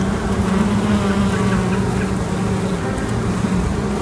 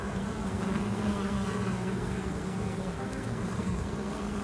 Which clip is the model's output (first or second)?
second